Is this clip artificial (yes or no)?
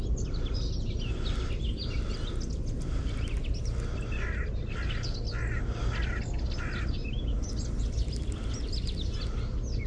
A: no